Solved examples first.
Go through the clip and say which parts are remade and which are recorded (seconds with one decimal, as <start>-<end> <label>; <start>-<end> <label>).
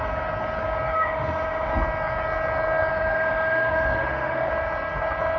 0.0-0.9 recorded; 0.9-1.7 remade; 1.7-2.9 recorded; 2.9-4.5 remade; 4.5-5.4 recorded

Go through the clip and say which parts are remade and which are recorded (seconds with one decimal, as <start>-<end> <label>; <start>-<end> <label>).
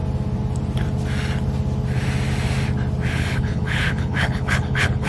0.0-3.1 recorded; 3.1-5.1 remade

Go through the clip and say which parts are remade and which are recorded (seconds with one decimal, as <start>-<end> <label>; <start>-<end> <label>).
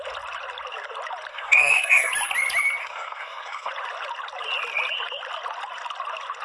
0.0-1.3 recorded; 1.3-2.1 remade; 2.1-2.8 recorded; 2.8-3.7 remade; 3.7-6.4 recorded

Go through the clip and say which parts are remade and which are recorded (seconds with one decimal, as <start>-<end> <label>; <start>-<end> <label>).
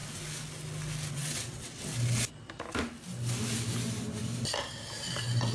0.0-1.1 recorded; 1.1-1.9 remade; 1.9-5.5 recorded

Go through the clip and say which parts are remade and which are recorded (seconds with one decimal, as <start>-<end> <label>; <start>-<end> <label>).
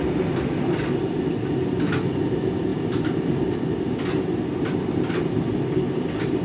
0.0-6.4 recorded